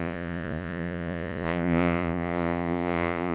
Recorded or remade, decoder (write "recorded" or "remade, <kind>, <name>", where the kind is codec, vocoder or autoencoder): remade, vocoder, Vocos